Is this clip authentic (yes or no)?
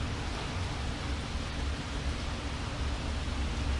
yes